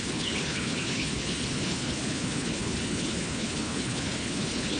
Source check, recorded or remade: remade